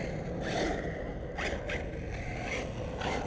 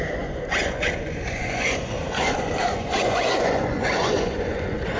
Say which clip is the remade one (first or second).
second